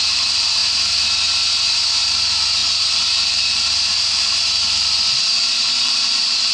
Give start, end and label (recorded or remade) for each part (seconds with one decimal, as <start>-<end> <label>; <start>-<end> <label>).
0.0-0.6 remade; 0.6-2.0 recorded; 2.0-6.5 remade